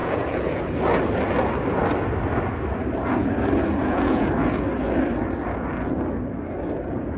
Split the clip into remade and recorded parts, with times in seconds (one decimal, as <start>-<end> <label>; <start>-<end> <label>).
0.0-0.6 remade; 0.6-3.8 recorded; 3.8-4.3 remade; 4.3-7.2 recorded